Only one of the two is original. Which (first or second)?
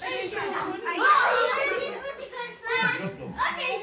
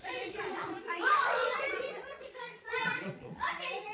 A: first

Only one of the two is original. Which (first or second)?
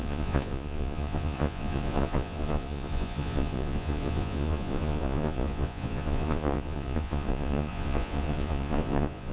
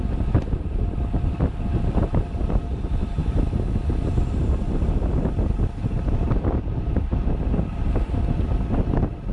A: second